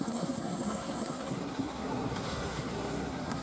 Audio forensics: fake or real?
fake